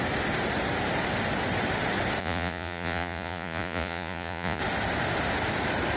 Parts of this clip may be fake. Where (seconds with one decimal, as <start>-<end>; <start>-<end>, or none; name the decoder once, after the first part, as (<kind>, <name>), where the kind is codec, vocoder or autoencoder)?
2.2-4.6 (vocoder, Vocos)